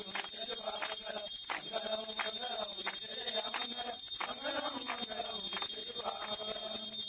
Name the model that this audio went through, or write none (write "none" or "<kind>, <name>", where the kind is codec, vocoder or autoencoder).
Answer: none